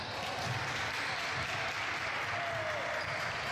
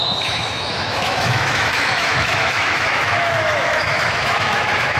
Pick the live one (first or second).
first